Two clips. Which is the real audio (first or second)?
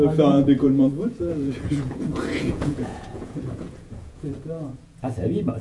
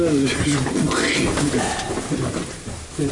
second